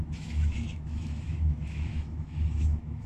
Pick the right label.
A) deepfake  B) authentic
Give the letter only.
A